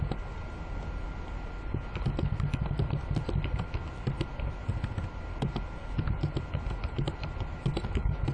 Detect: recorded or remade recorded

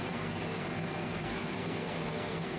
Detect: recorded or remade remade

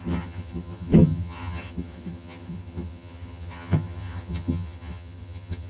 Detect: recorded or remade remade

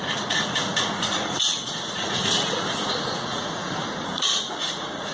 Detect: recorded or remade remade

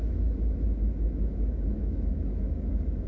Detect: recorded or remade remade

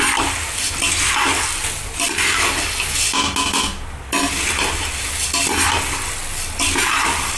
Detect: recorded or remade recorded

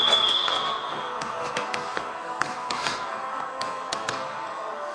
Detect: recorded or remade remade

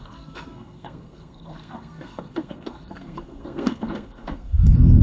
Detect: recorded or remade remade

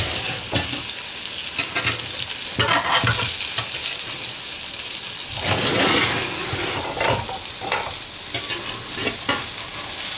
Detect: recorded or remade recorded